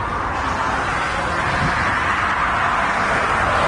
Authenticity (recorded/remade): recorded